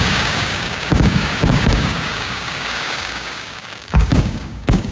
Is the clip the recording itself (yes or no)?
no